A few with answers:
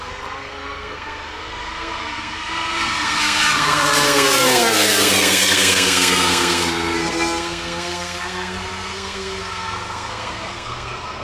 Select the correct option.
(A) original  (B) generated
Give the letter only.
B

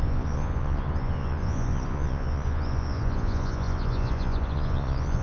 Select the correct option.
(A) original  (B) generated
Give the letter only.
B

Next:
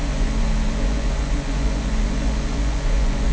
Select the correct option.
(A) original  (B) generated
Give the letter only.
B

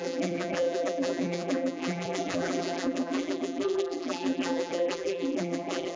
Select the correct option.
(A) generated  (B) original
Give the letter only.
A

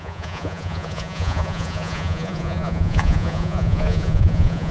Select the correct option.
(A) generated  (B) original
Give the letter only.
A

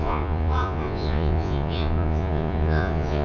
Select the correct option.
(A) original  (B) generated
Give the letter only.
B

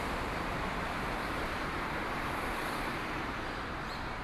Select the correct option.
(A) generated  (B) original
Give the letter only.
A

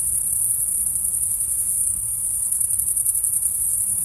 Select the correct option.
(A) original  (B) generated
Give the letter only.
B